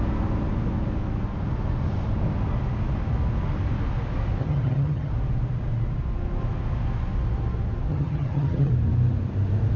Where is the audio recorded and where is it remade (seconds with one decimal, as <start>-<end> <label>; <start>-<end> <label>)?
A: 0.0-4.4 recorded; 4.4-5.1 remade; 5.1-7.9 recorded; 7.9-8.7 remade; 8.7-9.8 recorded